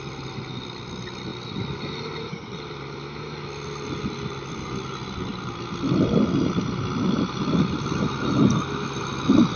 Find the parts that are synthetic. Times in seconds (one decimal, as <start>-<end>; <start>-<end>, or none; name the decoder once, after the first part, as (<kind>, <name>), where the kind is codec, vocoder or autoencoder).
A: none